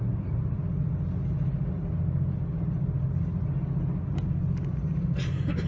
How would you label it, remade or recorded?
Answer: recorded